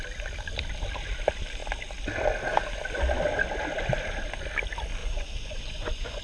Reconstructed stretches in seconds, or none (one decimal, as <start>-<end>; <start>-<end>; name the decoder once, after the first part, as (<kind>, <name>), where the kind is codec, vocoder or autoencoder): 5.0-6.2 (vocoder, Vocos)

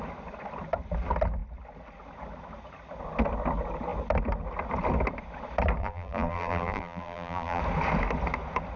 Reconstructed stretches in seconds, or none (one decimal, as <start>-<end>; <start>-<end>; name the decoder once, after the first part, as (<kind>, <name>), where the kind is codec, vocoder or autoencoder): 5.8-7.6 (vocoder, BigVGAN v2)

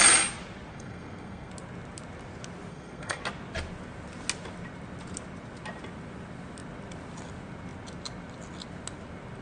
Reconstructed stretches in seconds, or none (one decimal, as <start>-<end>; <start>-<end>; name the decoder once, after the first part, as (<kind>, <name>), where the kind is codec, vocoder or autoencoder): 0.7-1.5 (codec, SNAC); 2.7-3.2

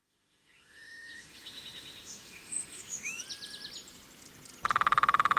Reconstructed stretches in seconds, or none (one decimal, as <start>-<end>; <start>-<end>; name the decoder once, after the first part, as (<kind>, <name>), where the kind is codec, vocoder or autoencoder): 0.0-3.2 (autoencoder, DAC-VAE)

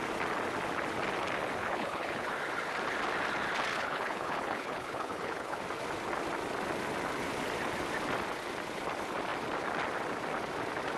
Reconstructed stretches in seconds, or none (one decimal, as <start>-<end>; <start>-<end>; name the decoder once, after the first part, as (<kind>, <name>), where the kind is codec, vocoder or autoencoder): 1.6-2.3 (codec, HILCodec); 3.7-5.6